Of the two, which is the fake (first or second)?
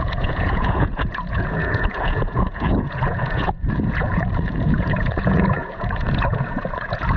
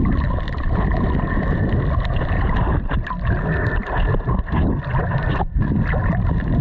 first